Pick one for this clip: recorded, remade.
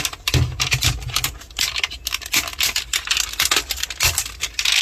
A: recorded